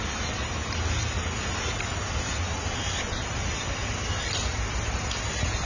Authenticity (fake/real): real